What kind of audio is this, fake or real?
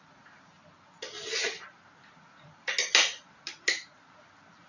real